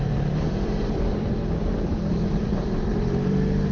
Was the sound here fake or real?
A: fake